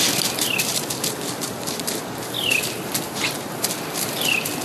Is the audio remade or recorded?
remade